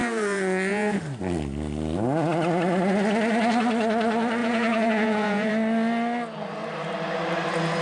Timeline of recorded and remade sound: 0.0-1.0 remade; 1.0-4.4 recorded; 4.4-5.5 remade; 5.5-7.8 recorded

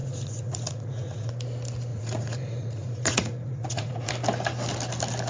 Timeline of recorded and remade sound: 0.0-1.3 remade; 1.3-1.9 recorded; 1.9-4.1 remade; 4.1-5.3 recorded

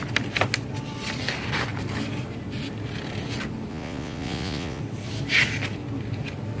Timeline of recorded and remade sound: 0.0-3.7 recorded; 3.7-4.8 remade; 4.8-6.6 recorded

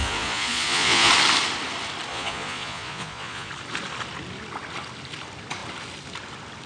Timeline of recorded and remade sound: 0.0-1.1 remade; 1.1-2.1 recorded; 2.1-3.5 remade; 3.5-6.7 recorded

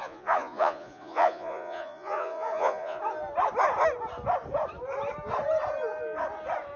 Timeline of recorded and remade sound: 0.0-3.0 remade; 3.0-6.8 recorded

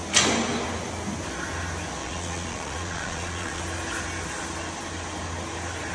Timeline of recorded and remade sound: 0.0-2.0 recorded; 2.0-3.6 remade; 3.6-5.9 recorded